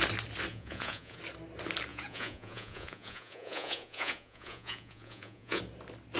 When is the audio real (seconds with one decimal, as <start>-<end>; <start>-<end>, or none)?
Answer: 0.0-0.5; 1.2-1.9; 5.6-6.2